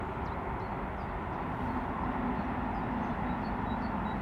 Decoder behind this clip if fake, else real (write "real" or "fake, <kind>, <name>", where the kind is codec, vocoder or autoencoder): real